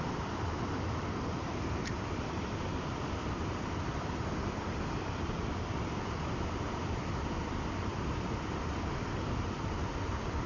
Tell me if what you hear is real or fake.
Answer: fake